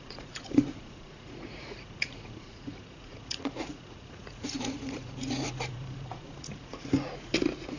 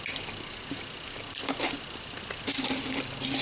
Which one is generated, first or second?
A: first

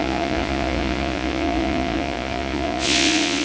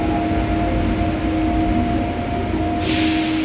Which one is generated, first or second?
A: first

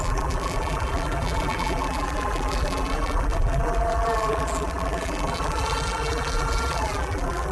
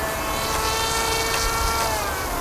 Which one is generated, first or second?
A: first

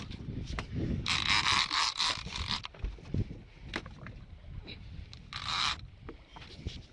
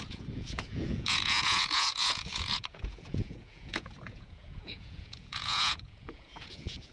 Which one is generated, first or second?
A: second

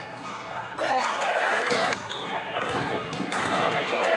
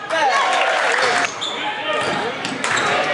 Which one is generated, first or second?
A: first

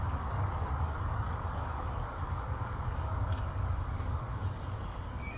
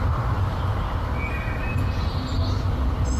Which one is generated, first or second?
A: first